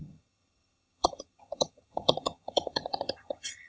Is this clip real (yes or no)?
no